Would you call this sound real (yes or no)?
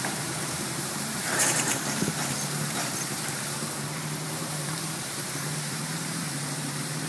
no